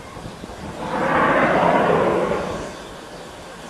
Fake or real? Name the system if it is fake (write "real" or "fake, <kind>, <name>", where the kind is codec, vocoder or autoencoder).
real